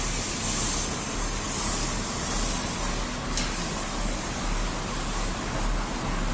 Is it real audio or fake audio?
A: real